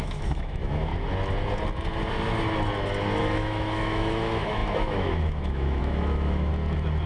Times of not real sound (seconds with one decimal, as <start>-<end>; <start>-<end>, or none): 0.0-0.9; 3.2-6.5